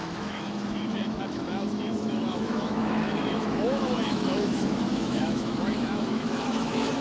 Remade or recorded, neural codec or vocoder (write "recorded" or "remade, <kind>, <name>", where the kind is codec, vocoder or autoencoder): remade, autoencoder, DAC-VAE